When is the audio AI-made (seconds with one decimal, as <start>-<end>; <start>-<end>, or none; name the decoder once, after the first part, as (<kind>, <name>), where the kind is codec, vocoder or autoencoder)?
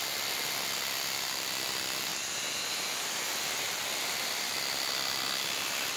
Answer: 0.0-2.1 (vocoder, BigVGAN v2); 3.0-6.0